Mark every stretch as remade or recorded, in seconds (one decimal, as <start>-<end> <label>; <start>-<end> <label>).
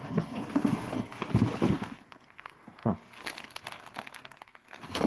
0.0-1.2 remade; 1.2-1.7 recorded; 1.7-5.1 remade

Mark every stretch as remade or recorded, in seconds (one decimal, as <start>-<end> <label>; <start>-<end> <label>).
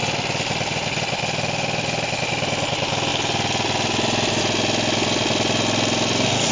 0.0-6.5 recorded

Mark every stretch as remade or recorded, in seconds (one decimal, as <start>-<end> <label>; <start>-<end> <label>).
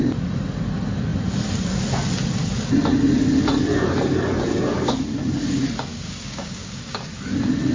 0.0-5.9 recorded; 5.9-7.1 remade; 7.1-7.7 recorded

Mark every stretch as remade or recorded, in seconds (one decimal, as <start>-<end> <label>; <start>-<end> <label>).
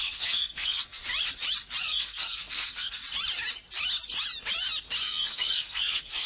0.0-1.0 remade; 1.0-1.8 recorded; 1.8-3.0 remade; 3.0-5.0 recorded; 5.0-6.3 remade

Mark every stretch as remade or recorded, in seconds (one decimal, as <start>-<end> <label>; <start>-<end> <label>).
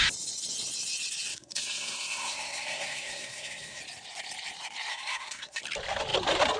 0.0-1.3 recorded; 1.3-3.8 remade; 3.8-4.9 recorded; 4.9-5.6 remade; 5.6-6.6 recorded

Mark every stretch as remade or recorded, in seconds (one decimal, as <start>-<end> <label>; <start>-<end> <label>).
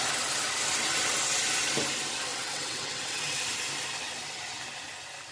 0.0-2.3 recorded; 2.3-3.4 remade; 3.4-5.3 recorded